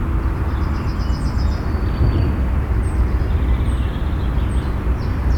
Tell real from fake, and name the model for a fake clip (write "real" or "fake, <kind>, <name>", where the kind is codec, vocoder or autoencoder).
real